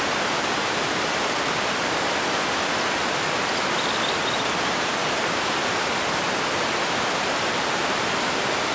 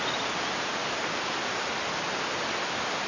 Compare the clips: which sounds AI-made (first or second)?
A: first